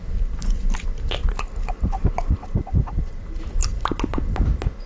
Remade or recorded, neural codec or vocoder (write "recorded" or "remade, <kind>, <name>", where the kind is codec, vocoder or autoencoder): recorded